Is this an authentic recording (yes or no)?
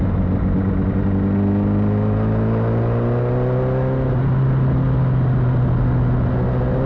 yes